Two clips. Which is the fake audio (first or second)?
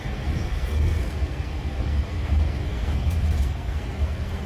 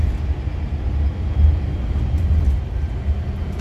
first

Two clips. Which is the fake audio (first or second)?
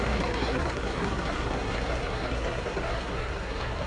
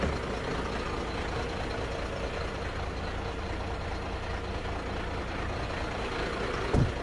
first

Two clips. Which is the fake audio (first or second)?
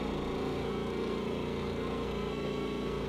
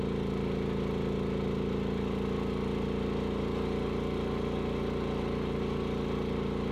first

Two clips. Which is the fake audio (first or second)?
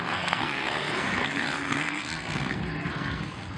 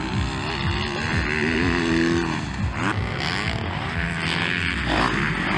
first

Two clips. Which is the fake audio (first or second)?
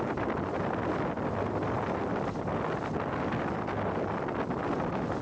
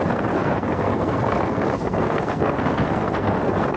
second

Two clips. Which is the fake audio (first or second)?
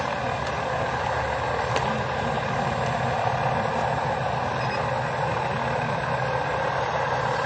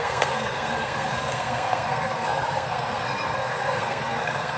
second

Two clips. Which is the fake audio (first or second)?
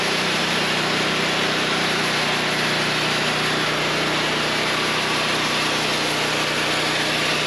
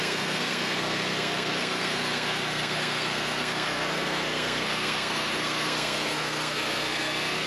second